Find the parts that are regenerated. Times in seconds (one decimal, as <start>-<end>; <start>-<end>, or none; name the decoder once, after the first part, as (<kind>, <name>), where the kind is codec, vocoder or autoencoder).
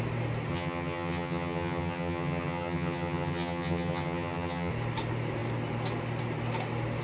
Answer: 0.5-4.7 (vocoder, HiFi-GAN)